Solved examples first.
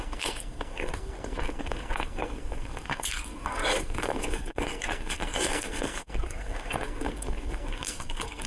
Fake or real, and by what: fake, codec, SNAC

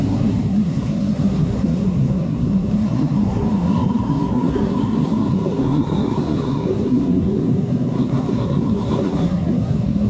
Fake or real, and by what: fake, codec, SNAC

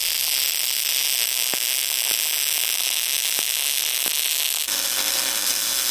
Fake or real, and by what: real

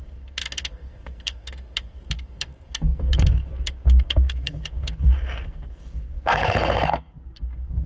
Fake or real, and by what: fake, codec, SNAC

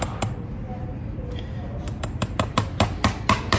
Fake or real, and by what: real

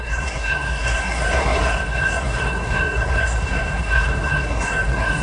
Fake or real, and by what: fake, codec, SNAC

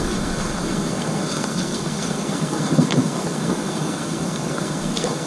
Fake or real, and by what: fake, codec, SNAC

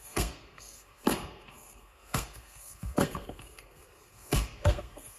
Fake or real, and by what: fake, codec, SNAC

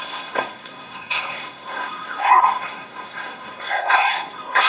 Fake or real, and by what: fake, codec, SNAC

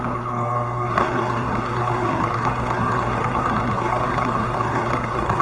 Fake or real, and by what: fake, codec, SNAC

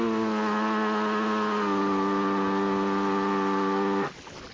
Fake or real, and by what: real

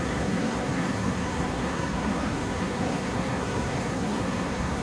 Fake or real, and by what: fake, codec, SNAC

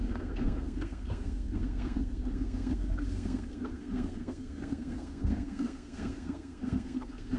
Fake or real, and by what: fake, codec, SNAC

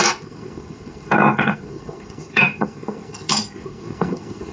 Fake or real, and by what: fake, codec, SNAC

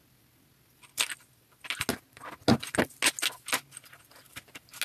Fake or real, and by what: real